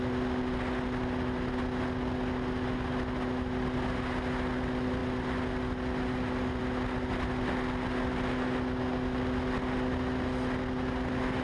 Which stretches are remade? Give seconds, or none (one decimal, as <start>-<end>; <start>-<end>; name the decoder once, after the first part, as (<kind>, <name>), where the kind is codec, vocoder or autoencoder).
none